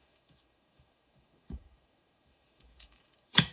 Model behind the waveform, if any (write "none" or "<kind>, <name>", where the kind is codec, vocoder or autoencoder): autoencoder, DAC-VAE